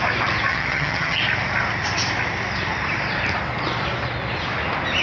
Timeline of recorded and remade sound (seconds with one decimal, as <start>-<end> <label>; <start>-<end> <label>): 0.0-0.5 recorded; 0.5-1.2 remade; 1.2-5.0 recorded